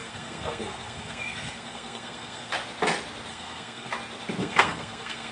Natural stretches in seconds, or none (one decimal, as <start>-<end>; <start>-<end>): 2.5-3.3; 3.9-4.4